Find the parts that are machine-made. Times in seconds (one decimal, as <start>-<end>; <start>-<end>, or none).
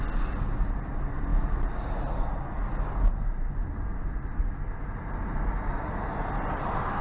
none